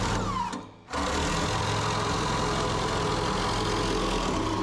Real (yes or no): yes